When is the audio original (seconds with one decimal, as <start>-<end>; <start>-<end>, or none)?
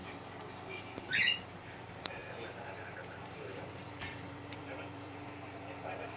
0.0-0.8; 2.2-3.2